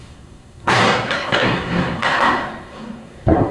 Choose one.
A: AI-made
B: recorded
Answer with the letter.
A